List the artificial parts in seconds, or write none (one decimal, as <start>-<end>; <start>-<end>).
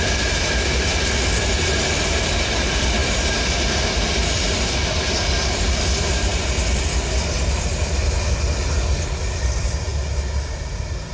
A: none